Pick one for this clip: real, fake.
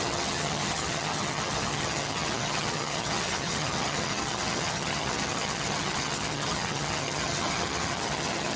fake